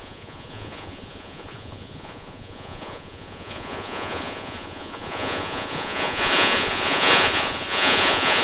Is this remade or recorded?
remade